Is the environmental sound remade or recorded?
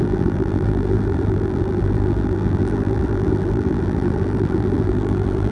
remade